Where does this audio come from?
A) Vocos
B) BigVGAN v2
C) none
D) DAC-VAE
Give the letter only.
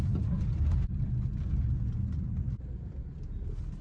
C